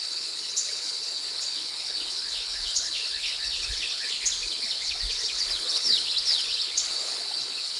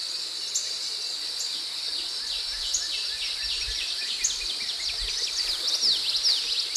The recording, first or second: second